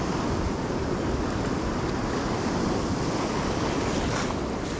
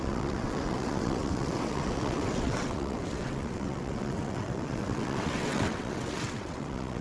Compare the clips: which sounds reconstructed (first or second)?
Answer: second